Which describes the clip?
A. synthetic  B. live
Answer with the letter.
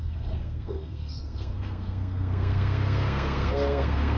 A